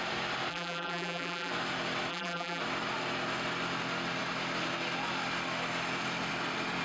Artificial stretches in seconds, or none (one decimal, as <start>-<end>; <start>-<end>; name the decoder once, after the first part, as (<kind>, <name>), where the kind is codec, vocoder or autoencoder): 0.5-1.5 (vocoder, BigVGAN v2); 2.1-2.6